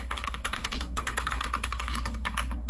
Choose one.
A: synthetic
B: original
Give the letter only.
A